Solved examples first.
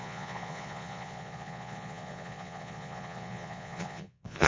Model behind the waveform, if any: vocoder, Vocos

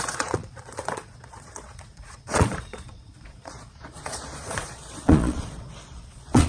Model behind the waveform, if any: vocoder, Vocos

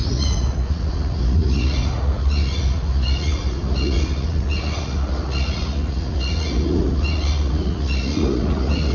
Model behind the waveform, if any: vocoder, Vocos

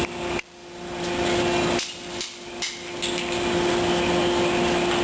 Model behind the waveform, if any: none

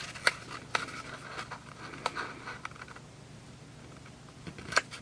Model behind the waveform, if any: none